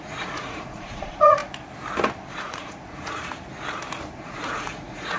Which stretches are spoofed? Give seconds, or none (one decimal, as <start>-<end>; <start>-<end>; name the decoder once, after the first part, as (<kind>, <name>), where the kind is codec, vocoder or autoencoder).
0.0-1.4 (vocoder, Vocos); 2.3-3.2; 4.2-5.2